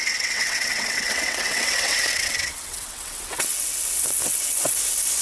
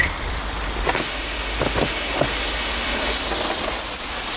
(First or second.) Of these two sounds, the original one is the second